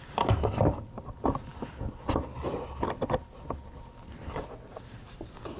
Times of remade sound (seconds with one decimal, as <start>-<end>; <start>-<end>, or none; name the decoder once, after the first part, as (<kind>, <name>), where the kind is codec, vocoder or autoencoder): none